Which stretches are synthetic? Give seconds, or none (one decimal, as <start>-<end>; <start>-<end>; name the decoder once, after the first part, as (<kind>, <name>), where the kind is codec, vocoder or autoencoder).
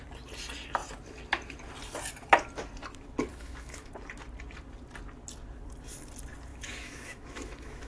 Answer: 3.3-3.9 (autoencoder, DAC-VAE); 6.5-7.9